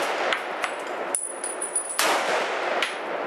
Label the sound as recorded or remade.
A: recorded